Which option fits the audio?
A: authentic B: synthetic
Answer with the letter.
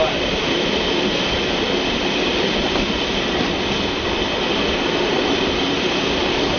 A